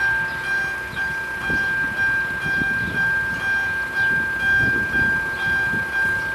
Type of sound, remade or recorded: recorded